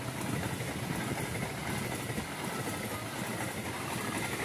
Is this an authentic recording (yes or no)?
yes